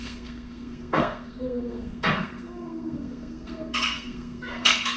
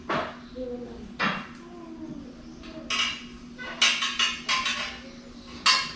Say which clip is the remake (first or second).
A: first